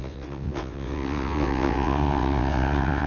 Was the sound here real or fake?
fake